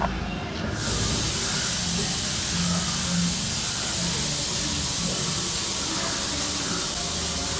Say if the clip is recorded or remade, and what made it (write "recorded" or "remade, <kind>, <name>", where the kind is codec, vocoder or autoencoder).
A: recorded